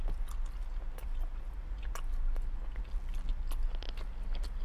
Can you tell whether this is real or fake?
real